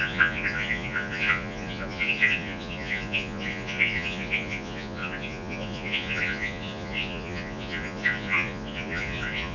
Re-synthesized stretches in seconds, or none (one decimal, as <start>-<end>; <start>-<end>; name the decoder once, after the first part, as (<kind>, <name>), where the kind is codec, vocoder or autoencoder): 0.0-9.5 (vocoder, Vocos)